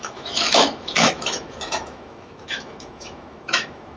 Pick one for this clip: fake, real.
fake